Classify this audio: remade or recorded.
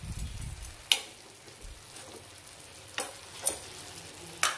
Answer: recorded